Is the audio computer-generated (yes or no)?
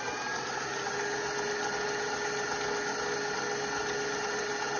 no